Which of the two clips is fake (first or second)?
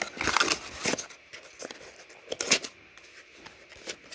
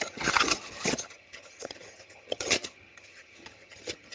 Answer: second